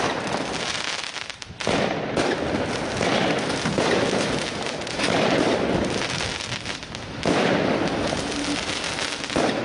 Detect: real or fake real